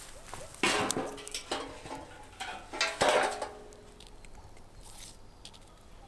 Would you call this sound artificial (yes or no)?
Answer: no